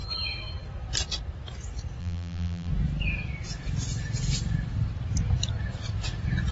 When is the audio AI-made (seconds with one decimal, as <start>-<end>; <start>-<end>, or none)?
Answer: 2.0-2.7